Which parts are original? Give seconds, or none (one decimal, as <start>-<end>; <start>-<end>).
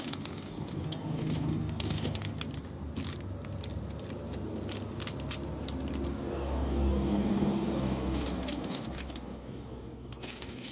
2.3-6.1